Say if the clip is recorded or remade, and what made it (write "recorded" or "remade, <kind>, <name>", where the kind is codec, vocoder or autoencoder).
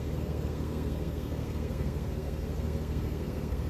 remade, codec, SNAC